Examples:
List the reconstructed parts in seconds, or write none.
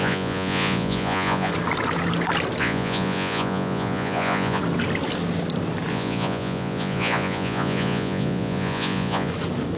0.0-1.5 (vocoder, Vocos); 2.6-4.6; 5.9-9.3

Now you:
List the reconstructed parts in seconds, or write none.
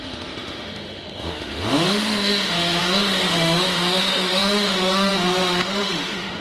0.0-6.4 (autoencoder, DAC-VAE)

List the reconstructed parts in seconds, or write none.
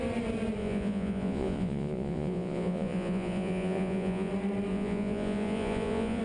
0.6-4.3 (vocoder, Vocos); 4.7-6.2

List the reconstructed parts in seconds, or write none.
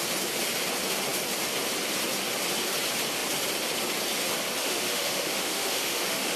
4.6-6.4 (autoencoder, DAC-VAE)